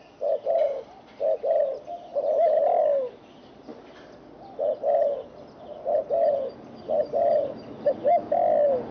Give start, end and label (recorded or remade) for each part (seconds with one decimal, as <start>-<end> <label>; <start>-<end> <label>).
0.0-8.9 recorded